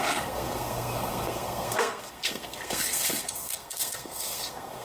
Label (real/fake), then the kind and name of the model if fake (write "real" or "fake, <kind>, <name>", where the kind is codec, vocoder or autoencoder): fake, codec, SNAC